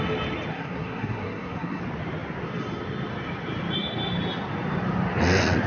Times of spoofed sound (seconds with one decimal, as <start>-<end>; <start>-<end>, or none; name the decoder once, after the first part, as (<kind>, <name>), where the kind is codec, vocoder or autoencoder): 0.5-1.8 (codec, SNAC)